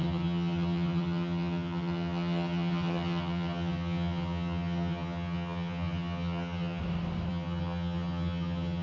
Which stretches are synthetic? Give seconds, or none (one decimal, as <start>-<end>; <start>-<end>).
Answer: 0.0-6.8; 7.3-8.8